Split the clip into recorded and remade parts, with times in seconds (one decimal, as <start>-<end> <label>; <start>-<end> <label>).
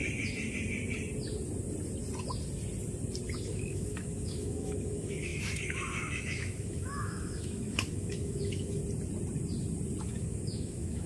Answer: 0.0-3.4 recorded; 3.4-8.8 remade; 8.8-10.0 recorded; 10.0-11.1 remade